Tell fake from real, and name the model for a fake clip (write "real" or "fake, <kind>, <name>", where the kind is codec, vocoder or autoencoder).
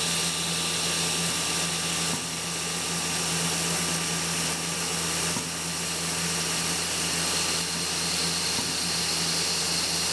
real